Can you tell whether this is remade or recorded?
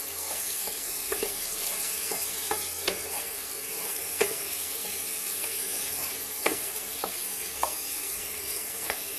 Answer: remade